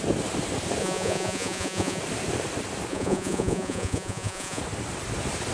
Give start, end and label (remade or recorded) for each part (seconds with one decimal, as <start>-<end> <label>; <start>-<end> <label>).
0.0-0.8 recorded; 0.8-2.0 remade; 2.0-2.9 recorded; 2.9-4.6 remade; 4.6-5.5 recorded